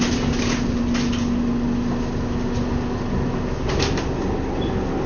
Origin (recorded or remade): recorded